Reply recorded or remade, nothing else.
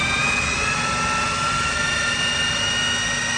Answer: recorded